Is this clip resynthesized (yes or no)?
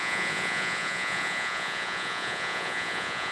yes